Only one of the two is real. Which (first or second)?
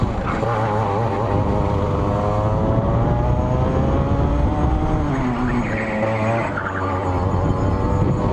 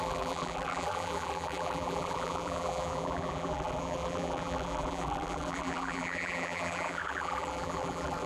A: first